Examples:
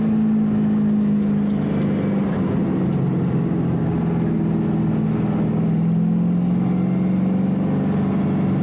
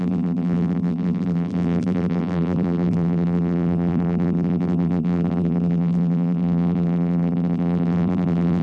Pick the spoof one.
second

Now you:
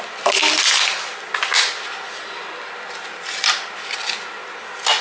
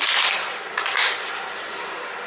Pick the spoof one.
second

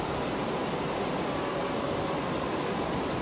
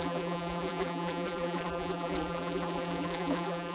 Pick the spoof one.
second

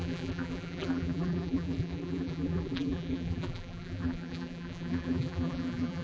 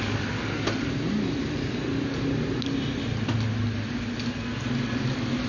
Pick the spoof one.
first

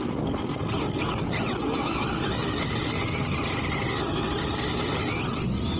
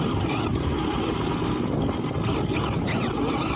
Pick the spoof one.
second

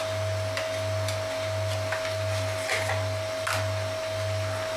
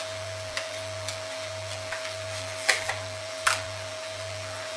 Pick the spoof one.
second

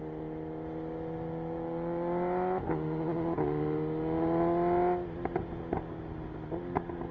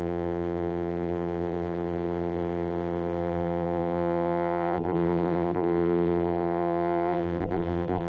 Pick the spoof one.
second